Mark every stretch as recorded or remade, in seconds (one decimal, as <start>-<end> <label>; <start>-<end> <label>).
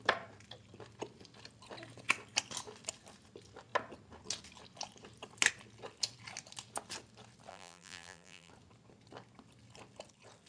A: 0.0-7.5 recorded; 7.5-8.5 remade; 8.5-10.5 recorded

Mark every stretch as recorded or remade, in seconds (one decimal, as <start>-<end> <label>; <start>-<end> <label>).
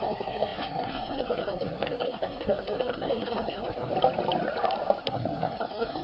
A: 0.0-3.9 remade; 3.9-5.0 recorded; 5.0-6.0 remade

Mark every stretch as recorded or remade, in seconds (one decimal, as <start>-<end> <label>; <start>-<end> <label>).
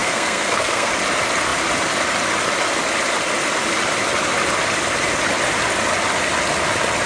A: 0.0-0.9 remade; 0.9-7.1 recorded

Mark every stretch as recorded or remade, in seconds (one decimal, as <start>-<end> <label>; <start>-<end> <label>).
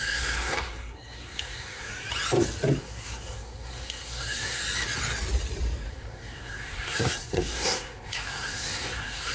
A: 0.0-1.9 remade; 1.9-2.8 recorded; 2.8-4.6 remade; 4.6-5.9 recorded; 5.9-9.3 remade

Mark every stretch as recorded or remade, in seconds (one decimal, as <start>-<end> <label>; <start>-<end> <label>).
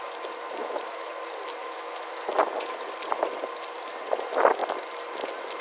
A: 0.0-0.6 recorded; 0.6-1.1 remade; 1.1-1.6 recorded; 1.6-2.1 remade; 2.1-5.6 recorded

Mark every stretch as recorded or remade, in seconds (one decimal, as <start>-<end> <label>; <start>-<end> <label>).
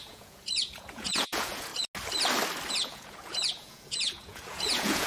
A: 0.0-1.7 remade; 1.7-2.7 recorded; 2.7-5.1 remade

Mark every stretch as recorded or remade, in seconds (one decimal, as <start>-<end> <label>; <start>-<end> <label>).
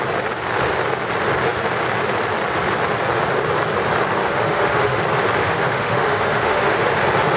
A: 0.0-4.2 recorded; 4.2-5.0 remade; 5.0-5.4 recorded; 5.4-6.9 remade; 6.9-7.4 recorded